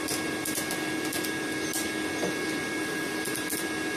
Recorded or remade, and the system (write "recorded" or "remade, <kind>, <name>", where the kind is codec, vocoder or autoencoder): recorded